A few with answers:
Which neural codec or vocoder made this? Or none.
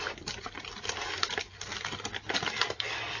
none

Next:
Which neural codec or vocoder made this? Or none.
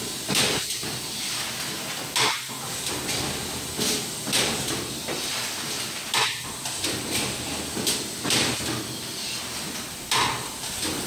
none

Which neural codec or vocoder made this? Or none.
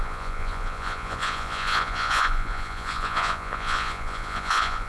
vocoder, Vocos